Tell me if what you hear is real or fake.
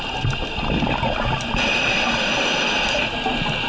real